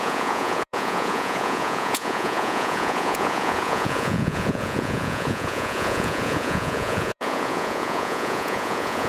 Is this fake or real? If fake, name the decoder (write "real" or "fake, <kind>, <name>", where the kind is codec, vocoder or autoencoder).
fake, vocoder, Vocos